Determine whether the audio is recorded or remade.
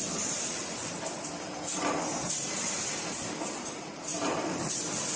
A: remade